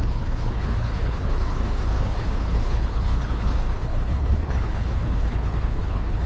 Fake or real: fake